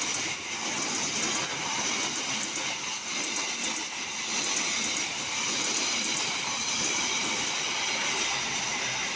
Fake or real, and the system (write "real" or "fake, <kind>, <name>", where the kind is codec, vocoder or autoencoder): real